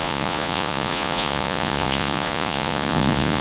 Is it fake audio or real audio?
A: fake